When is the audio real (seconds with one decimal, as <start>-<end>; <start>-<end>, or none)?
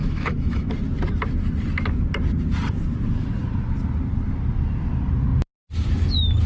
0.7-6.5